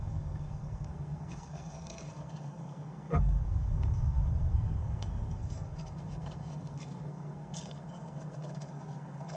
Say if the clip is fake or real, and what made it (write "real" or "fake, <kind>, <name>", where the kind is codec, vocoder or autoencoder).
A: fake, codec, SNAC